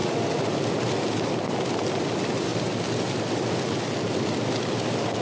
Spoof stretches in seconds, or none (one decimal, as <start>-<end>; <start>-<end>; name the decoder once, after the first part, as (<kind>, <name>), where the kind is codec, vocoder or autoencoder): none

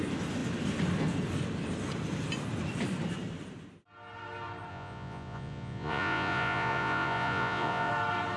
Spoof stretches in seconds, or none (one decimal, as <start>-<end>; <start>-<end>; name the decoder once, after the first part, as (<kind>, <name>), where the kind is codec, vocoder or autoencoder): 4.7-7.9 (vocoder, Vocos)

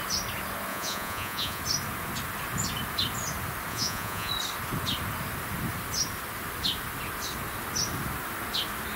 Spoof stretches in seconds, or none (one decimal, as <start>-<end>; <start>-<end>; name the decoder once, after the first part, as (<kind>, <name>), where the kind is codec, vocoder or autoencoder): 0.7-1.6 (vocoder, Vocos); 3.7-4.3

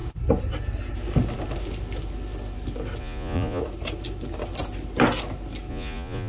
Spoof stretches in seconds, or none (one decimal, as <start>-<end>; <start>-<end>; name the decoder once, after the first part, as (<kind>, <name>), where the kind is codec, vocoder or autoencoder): 3.0-3.6 (vocoder, Vocos); 5.7-6.3

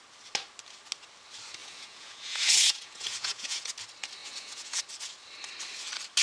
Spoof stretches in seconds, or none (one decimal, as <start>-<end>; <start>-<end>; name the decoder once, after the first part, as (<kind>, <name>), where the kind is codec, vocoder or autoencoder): 1.6-3.7 (vocoder, Vocos); 4.2-4.8

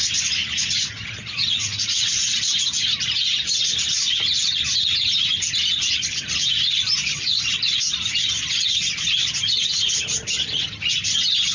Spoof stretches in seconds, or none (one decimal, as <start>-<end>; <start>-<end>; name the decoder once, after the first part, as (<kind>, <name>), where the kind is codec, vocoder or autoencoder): 0.4-2.1 (vocoder, Vocos)

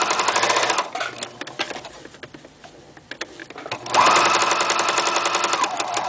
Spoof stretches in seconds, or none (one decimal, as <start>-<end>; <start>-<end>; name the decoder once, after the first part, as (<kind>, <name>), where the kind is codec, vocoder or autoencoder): none

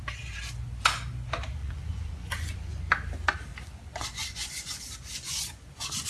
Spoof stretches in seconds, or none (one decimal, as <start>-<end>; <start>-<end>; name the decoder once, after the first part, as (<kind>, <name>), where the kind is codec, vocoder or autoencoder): 1.6-2.8 (vocoder, Vocos); 3.5-6.1